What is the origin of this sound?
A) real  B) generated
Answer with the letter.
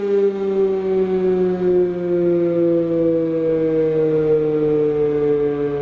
A